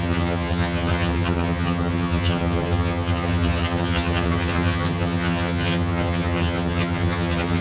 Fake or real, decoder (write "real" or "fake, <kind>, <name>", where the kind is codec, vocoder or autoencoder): fake, vocoder, HiFi-GAN